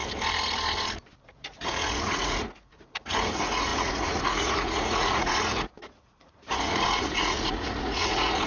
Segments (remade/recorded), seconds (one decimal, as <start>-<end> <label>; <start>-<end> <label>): 0.0-1.3 recorded; 1.3-8.5 remade